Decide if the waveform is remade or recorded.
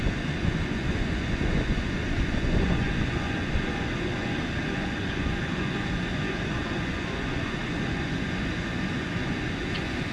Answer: remade